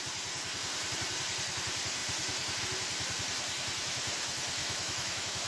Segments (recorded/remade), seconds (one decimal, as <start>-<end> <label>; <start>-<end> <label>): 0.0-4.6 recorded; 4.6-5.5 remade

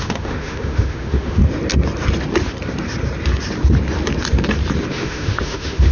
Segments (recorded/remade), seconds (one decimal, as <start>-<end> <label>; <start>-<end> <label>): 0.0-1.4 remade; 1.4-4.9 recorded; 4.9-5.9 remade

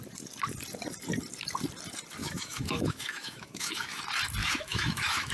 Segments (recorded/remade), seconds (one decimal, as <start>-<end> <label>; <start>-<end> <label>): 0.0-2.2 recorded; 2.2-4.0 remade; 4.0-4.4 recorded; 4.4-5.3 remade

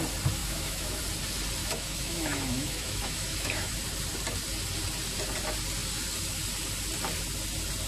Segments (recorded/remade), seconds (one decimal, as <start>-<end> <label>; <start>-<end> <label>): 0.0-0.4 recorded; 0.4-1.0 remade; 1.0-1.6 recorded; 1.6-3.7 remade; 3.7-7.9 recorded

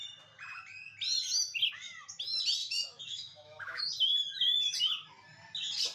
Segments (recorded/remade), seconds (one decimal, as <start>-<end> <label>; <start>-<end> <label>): 0.0-2.6 recorded; 2.6-3.8 remade; 3.8-5.9 recorded

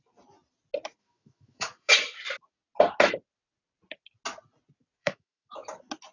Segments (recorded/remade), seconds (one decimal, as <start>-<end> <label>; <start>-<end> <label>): 0.0-1.0 recorded; 1.0-1.9 remade; 1.9-5.0 recorded; 5.0-5.5 remade; 5.5-6.1 recorded